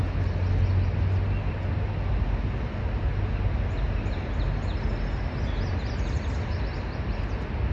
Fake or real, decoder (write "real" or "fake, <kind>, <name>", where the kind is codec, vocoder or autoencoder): real